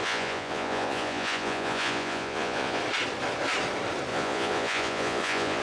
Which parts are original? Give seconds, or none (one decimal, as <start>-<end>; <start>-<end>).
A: 2.8-4.1

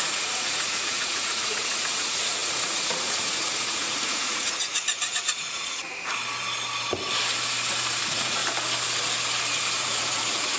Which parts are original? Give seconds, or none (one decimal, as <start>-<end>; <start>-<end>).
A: 5.8-8.0; 8.4-9.8

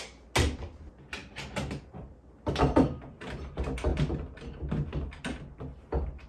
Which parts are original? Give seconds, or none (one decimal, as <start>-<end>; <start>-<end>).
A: 0.0-6.3

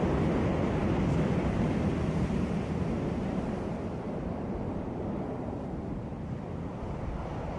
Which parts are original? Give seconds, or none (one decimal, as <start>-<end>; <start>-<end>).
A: 0.0-7.6

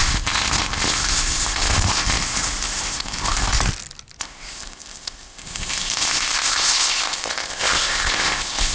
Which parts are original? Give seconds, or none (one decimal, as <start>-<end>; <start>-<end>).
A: 3.6-4.2

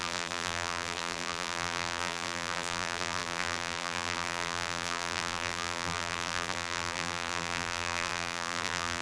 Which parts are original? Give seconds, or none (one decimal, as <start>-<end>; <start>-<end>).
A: none

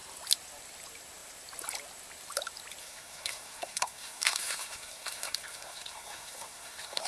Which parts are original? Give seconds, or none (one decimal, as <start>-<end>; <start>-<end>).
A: 0.0-2.8